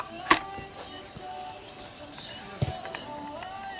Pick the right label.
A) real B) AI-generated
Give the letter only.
A